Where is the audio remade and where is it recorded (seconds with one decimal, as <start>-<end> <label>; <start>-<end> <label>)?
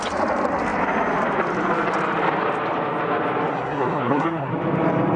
0.0-3.5 recorded; 3.5-4.5 remade; 4.5-5.2 recorded